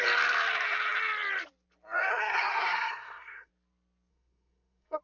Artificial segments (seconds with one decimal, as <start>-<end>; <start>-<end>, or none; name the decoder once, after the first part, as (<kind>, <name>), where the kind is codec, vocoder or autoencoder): 2.1-3.5 (codec, SNAC); 4.1-5.0